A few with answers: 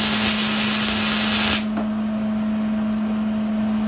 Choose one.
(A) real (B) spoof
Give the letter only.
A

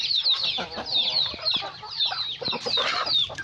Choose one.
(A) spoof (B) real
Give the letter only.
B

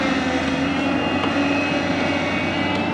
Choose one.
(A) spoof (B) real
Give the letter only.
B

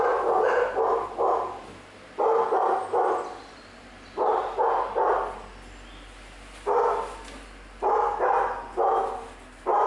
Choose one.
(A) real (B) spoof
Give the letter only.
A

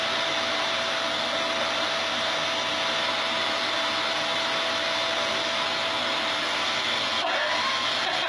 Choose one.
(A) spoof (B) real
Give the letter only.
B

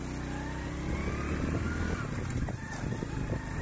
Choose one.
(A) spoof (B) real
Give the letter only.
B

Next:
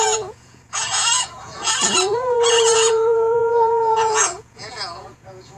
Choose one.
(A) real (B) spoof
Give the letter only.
B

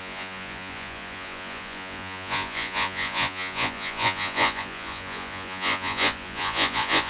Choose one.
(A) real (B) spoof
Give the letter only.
B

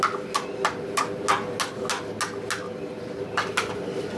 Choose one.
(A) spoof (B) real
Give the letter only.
B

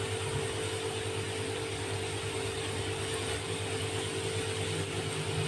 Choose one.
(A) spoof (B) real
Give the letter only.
B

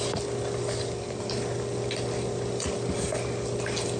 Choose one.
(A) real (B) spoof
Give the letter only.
A